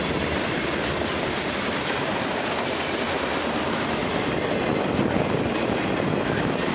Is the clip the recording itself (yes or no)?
yes